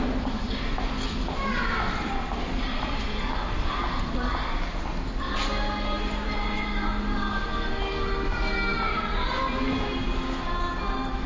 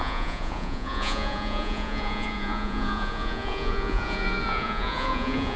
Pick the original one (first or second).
first